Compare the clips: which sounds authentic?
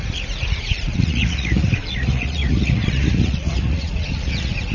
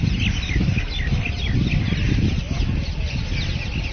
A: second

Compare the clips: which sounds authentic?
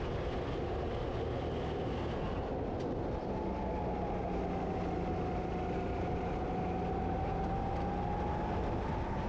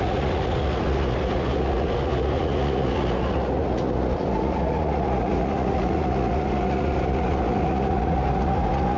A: first